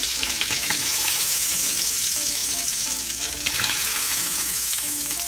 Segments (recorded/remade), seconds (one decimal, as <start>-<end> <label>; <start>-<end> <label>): 0.0-5.3 remade